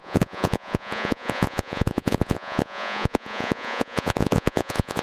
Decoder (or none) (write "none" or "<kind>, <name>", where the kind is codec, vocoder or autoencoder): vocoder, Vocos